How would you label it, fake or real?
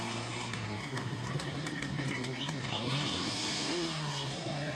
fake